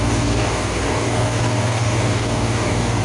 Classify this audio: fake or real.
fake